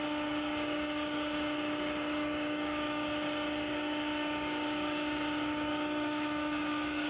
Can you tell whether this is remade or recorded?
remade